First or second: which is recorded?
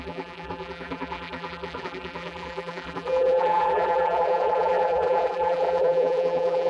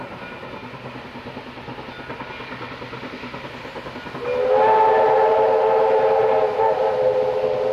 second